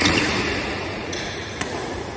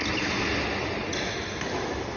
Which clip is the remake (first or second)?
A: first